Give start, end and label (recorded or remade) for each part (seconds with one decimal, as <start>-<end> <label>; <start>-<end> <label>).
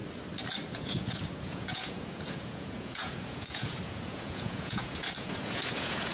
0.0-0.7 recorded; 0.7-6.1 remade